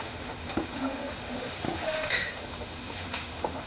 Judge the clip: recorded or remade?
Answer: remade